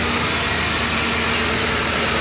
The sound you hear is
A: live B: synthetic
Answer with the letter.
A